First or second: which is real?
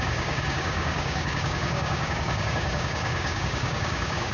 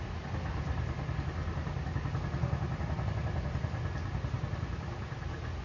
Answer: second